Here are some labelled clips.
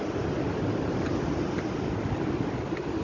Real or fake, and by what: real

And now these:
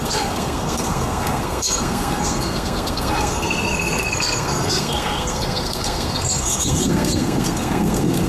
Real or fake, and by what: fake, codec, SNAC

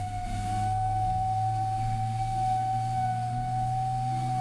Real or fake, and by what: fake, codec, SNAC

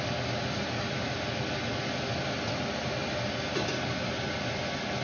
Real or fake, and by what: real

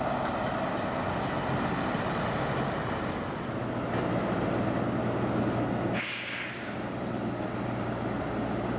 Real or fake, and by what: real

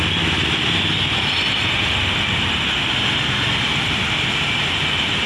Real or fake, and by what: real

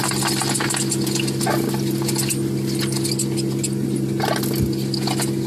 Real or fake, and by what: real